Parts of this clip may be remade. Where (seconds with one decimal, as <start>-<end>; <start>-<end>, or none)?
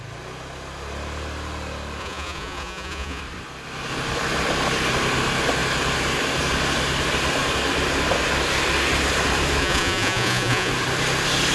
2.0-3.2; 9.6-10.7